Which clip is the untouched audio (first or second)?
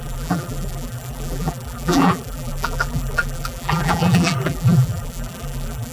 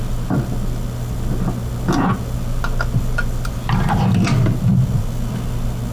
second